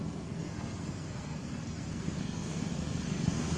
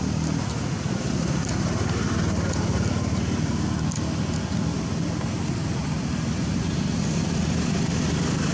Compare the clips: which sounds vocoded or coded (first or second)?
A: first